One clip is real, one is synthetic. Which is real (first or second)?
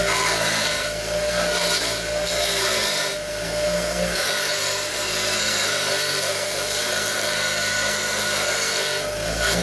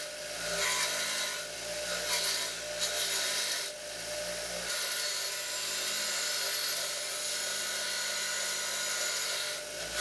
second